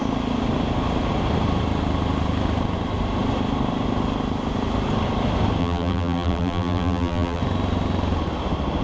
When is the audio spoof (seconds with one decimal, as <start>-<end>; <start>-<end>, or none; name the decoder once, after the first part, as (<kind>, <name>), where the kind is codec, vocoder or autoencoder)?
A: 5.6-7.4 (vocoder, BigVGAN v2)